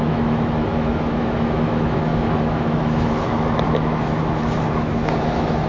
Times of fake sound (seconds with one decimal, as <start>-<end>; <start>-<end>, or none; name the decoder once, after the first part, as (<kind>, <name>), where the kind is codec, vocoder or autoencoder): 0.0-5.7 (autoencoder, DAC-VAE)

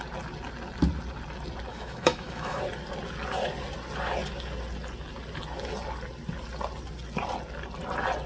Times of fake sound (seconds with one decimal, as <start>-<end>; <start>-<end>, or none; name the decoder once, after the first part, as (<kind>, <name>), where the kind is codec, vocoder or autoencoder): 1.7-2.6 (autoencoder, DAC-VAE)